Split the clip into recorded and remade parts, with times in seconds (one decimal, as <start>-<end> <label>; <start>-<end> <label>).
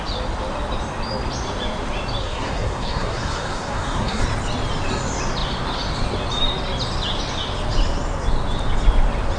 0.0-2.2 recorded; 2.2-4.2 remade; 4.2-9.4 recorded